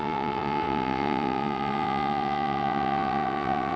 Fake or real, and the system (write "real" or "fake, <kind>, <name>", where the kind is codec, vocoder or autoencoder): fake, vocoder, WaveNeXt